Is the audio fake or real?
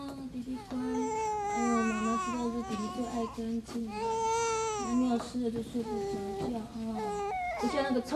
real